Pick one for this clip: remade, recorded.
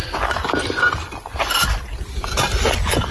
recorded